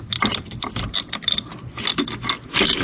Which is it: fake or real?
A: real